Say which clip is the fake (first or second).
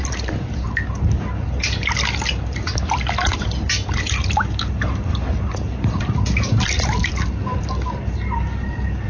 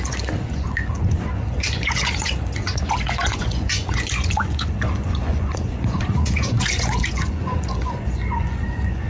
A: second